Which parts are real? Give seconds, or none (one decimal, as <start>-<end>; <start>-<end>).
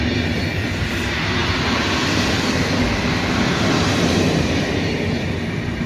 0.0-5.9